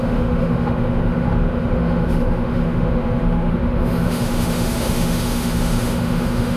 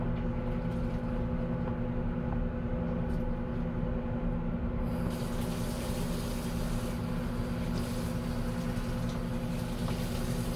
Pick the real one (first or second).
second